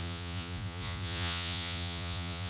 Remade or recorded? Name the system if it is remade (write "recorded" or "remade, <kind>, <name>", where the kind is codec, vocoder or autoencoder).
remade, vocoder, Vocos